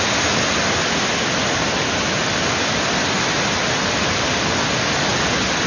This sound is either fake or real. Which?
real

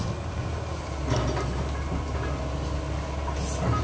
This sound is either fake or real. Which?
real